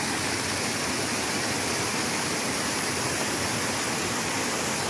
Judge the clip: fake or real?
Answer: real